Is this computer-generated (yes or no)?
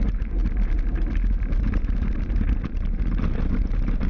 yes